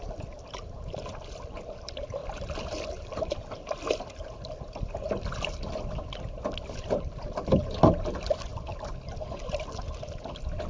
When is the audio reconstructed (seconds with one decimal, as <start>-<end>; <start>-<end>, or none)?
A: 2.2-5.5